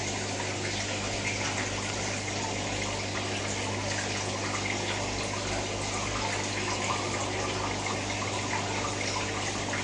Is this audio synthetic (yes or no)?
no